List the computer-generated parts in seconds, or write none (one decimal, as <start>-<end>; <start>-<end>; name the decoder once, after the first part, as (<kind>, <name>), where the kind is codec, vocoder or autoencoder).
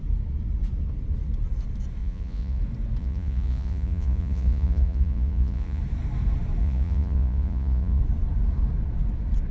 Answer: 2.0-2.6 (vocoder, Vocos); 3.0-5.8; 6.6-8.0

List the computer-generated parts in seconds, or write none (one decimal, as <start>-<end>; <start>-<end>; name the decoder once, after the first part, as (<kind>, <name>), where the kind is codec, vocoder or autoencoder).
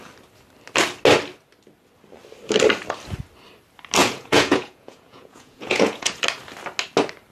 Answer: 4.0-6.2 (vocoder, Vocos)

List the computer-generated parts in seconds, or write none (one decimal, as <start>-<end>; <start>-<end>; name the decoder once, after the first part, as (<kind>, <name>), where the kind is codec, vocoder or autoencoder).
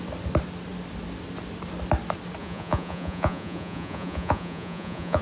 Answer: 2.4-5.2 (vocoder, Vocos)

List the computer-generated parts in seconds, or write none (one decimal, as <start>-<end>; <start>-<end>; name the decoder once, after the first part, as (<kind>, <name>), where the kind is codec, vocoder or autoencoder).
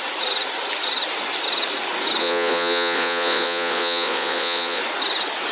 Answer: 2.2-4.8 (vocoder, Vocos)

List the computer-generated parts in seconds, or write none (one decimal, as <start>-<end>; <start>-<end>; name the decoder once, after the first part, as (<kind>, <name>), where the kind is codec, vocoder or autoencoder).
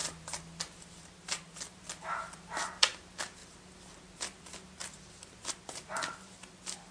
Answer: none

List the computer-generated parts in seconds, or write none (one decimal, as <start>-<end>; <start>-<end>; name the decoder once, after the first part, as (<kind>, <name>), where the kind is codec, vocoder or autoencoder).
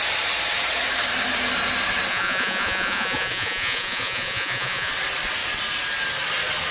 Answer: 2.1-4.9 (vocoder, Vocos)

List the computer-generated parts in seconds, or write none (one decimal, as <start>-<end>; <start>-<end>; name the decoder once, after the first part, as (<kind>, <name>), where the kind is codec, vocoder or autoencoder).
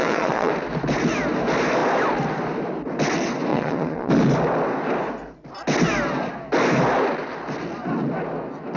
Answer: 0.0-0.5 (vocoder, Vocos); 3.5-4.1